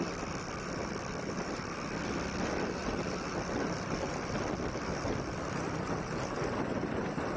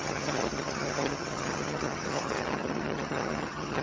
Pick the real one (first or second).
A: first